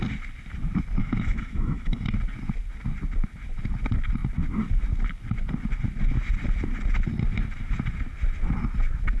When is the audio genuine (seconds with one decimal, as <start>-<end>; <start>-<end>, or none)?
0.0-1.0; 2.1-9.2